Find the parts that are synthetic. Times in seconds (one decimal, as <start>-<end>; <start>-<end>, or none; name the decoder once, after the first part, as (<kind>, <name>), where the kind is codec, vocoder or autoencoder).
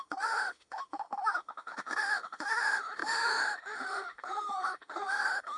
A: 0.0-5.6 (autoencoder, DAC-VAE)